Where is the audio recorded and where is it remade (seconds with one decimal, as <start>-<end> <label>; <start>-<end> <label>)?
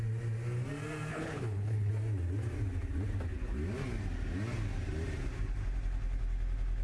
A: 0.0-1.1 recorded; 1.1-1.9 remade; 1.9-6.8 recorded